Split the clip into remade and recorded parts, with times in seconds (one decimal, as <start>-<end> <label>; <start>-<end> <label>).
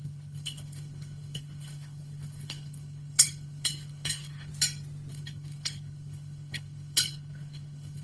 0.0-4.5 remade; 4.5-5.1 recorded; 5.1-8.0 remade